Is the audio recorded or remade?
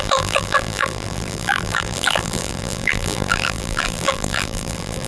remade